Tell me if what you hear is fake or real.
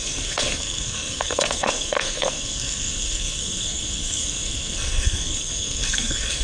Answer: fake